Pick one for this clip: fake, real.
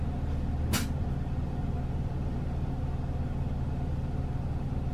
real